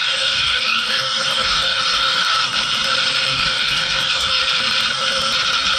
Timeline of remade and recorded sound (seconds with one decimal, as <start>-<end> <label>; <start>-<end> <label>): 0.0-2.5 remade; 2.5-3.3 recorded; 3.3-4.4 remade; 4.4-5.8 recorded